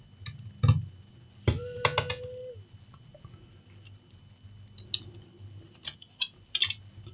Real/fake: real